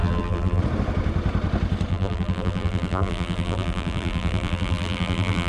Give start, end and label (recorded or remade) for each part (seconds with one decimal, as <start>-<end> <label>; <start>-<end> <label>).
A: 0.0-0.6 remade; 0.6-1.9 recorded; 1.9-5.5 remade